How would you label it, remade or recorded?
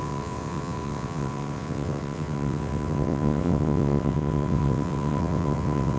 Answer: remade